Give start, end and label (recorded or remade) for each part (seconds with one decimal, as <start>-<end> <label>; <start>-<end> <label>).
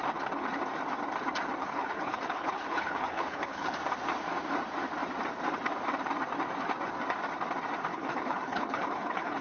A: 0.0-1.6 recorded; 1.6-3.7 remade; 3.7-7.9 recorded; 7.9-9.4 remade